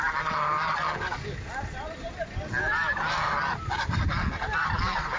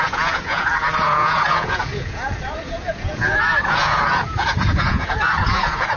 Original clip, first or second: first